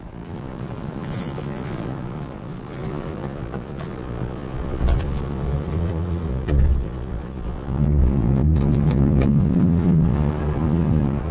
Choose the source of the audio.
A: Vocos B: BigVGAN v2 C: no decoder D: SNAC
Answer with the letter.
A